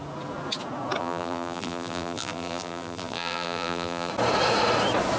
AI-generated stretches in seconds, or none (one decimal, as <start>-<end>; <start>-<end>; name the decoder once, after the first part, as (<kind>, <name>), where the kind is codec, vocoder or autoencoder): 1.0-4.1 (vocoder, BigVGAN v2)